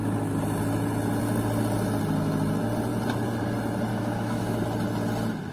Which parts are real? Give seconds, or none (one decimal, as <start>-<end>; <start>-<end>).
0.0-3.9; 4.6-5.5